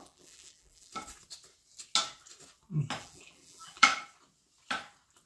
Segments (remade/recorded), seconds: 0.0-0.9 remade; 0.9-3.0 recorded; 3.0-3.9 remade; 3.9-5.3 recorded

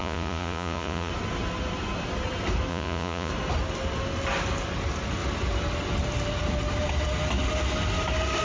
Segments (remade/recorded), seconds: 0.0-1.1 remade; 1.1-2.7 recorded; 2.7-3.3 remade; 3.3-8.4 recorded

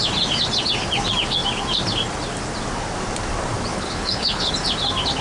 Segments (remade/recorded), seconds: 0.0-3.7 recorded; 3.7-4.5 remade; 4.5-5.2 recorded

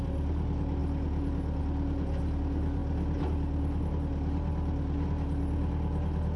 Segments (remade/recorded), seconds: 0.0-6.4 recorded

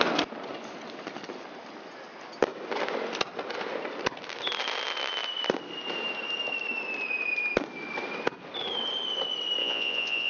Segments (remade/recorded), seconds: 0.0-9.6 recorded; 9.6-10.3 remade

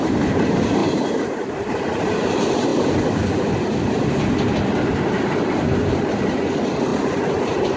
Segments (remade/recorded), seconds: 0.0-2.7 remade; 2.7-4.1 recorded; 4.1-7.8 remade